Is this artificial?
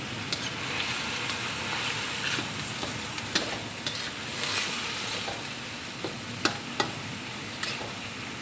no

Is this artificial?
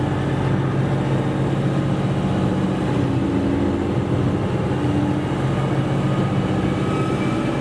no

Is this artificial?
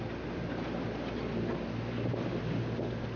no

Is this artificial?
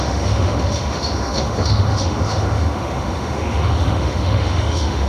yes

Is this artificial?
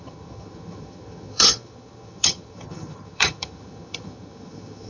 yes